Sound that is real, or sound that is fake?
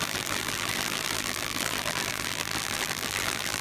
fake